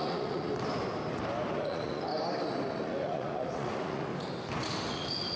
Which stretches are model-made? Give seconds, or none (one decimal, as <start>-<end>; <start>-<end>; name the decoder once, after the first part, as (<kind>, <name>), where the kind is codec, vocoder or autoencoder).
0.0-0.5 (vocoder, Vocos); 1.5-2.1; 2.7-4.1; 4.9-5.4